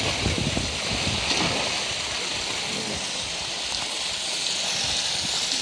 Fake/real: real